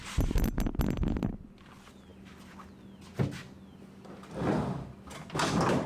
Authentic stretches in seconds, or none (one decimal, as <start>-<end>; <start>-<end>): 0.0-5.9